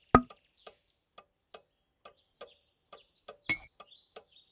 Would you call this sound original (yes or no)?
yes